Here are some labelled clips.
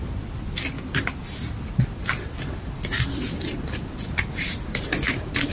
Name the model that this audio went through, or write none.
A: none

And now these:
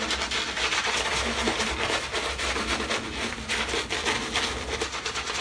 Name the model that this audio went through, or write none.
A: none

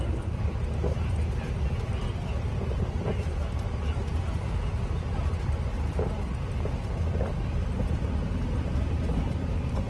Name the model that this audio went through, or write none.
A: none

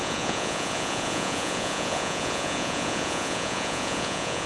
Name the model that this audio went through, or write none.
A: vocoder, Vocos